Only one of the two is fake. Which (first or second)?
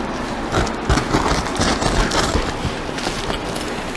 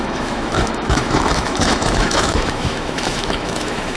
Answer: second